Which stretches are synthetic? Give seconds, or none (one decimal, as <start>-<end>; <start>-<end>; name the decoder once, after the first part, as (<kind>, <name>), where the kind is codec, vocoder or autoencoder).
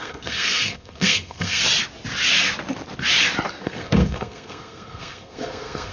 0.0-1.6 (codec, SNAC); 3.6-5.9